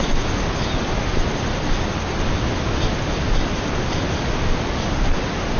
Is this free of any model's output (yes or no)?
yes